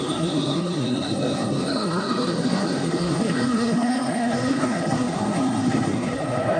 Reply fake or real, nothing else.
fake